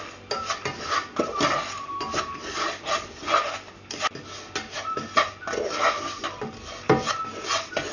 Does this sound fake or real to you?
real